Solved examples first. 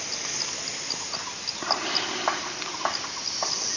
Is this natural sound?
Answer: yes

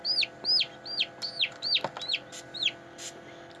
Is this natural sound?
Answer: yes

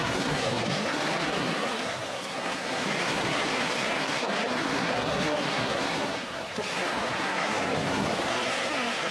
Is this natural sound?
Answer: no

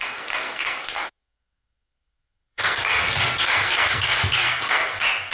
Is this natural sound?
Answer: no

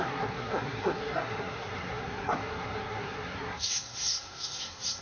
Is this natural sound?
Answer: no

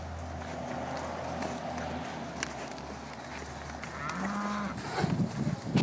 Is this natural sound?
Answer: yes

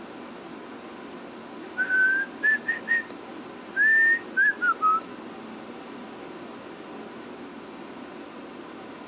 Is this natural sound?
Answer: yes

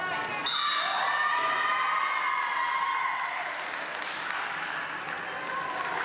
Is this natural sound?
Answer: yes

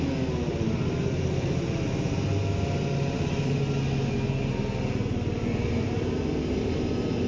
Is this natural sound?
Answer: yes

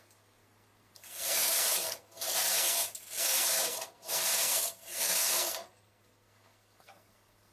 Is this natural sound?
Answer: no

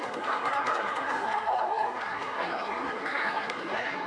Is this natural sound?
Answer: no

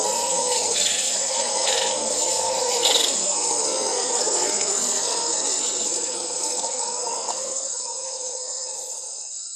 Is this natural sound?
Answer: no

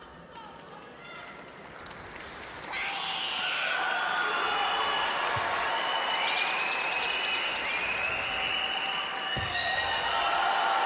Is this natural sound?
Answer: yes